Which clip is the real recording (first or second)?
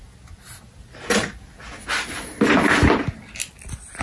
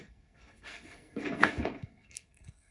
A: first